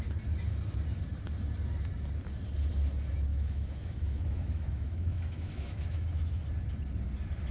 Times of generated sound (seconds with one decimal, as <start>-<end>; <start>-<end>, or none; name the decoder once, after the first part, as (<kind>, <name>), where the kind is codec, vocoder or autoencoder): 3.3-6.4 (autoencoder, DAC-VAE)